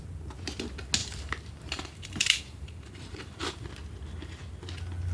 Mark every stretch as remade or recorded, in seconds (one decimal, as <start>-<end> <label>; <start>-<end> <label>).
0.0-1.0 recorded; 1.0-3.7 remade; 3.7-5.1 recorded